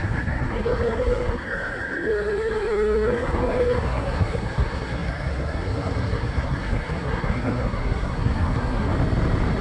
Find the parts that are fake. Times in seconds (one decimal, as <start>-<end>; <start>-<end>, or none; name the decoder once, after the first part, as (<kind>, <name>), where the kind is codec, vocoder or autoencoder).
0.0-8.9 (codec, SNAC)